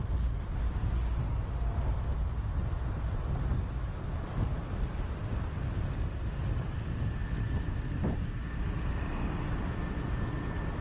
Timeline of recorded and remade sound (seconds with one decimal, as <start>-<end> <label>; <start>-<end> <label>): 0.0-10.8 recorded